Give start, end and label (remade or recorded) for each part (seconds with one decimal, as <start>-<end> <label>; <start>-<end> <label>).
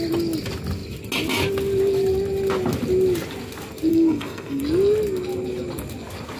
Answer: 0.0-3.9 recorded; 3.9-4.6 remade; 4.6-6.4 recorded